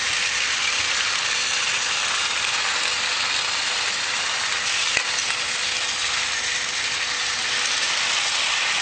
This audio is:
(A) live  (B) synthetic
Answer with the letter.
A